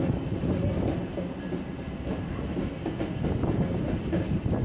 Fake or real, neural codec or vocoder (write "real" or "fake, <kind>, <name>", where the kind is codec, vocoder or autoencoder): real